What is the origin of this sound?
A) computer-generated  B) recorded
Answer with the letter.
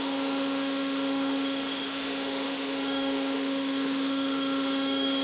A